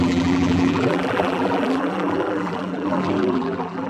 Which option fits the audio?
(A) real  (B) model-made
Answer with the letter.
B